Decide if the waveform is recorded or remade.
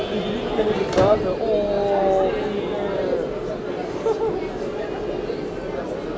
recorded